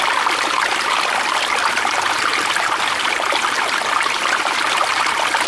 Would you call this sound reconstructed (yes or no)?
yes